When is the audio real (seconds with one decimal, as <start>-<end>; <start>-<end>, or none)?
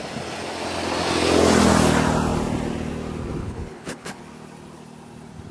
0.0-3.4; 4.2-5.5